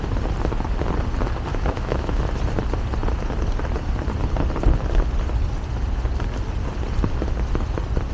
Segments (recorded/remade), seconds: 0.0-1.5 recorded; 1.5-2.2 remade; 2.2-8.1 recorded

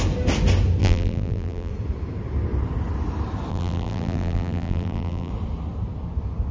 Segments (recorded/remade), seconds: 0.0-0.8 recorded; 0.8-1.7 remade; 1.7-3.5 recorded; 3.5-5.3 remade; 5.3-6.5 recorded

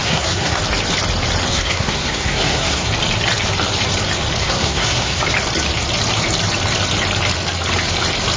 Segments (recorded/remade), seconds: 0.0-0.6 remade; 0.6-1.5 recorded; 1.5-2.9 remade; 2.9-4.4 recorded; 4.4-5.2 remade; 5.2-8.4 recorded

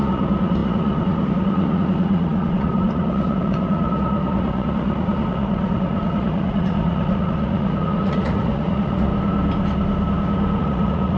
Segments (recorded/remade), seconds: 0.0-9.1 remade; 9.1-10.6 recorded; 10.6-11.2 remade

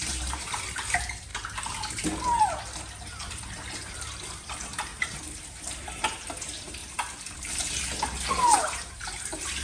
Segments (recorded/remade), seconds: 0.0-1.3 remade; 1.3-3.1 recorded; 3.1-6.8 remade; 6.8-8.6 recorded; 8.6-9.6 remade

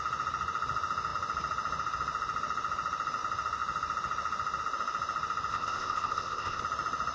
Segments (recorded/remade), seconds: 0.0-5.5 recorded; 5.5-6.6 remade; 6.6-7.1 recorded